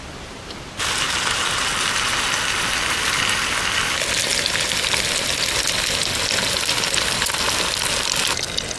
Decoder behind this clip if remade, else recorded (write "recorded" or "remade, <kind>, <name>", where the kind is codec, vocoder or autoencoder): recorded